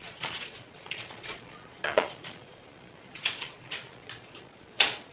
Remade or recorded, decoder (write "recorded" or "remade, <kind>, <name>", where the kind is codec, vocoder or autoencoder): remade, vocoder, Vocos